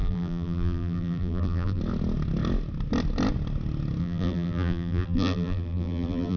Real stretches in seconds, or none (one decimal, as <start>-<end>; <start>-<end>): 1.8-4.0